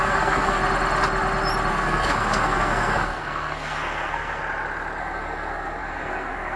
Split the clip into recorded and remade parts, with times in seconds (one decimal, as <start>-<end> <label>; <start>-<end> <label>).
0.0-0.6 remade; 0.6-1.7 recorded; 1.7-4.4 remade; 4.4-5.0 recorded; 5.0-6.6 remade